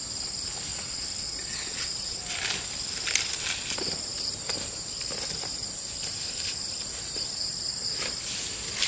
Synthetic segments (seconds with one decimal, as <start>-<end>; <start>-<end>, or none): 0.7-2.2